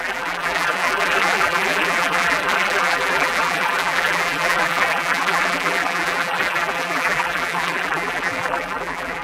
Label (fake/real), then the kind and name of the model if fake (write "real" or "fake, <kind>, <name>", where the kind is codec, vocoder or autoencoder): fake, vocoder, BigVGAN v2